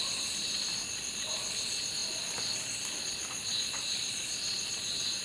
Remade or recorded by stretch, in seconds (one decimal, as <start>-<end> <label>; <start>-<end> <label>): 0.0-5.2 recorded